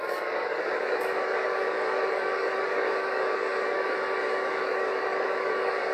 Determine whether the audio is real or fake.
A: fake